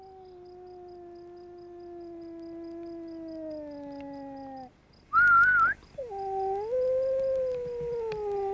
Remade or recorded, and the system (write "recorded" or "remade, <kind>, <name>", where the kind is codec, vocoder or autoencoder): recorded